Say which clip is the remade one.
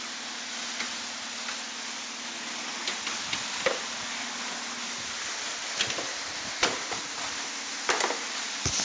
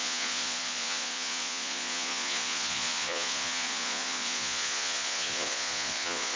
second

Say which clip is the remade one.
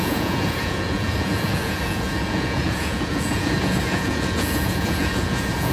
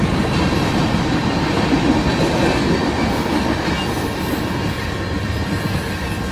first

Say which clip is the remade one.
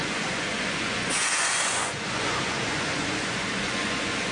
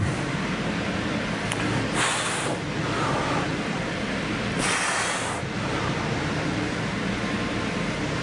first